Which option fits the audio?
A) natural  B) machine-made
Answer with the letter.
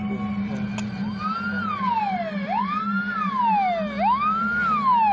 A